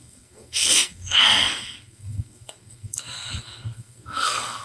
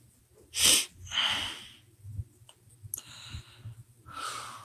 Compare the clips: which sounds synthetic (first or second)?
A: first